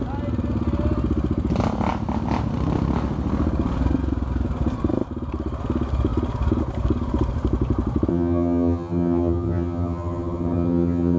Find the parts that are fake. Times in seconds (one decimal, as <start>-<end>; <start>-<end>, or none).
8.1-11.2